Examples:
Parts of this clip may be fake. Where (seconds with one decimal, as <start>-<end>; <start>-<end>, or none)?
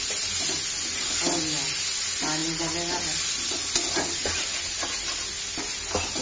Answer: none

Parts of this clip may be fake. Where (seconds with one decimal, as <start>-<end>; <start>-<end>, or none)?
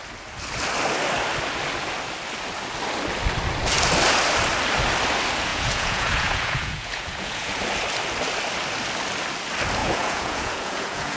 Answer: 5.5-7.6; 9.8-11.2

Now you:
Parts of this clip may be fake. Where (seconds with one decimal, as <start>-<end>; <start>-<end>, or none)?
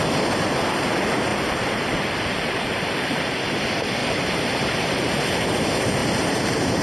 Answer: 1.3-3.2; 4.0-5.5; 6.0-6.8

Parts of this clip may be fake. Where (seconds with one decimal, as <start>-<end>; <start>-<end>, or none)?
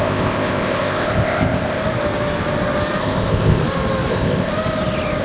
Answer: 0.0-1.8; 3.0-3.6; 4.1-4.5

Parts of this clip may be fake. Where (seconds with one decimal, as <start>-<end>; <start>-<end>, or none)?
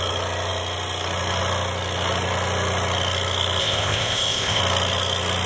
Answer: 3.6-4.6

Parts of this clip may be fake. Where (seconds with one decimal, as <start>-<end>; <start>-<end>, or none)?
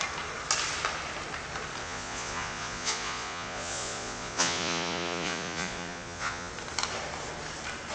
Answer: 1.8-6.5